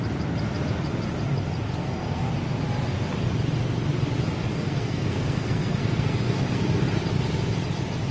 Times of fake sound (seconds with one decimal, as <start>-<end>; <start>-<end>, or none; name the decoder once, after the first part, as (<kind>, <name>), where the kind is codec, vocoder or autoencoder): 1.8-2.3 (codec, SNAC); 4.5-6.8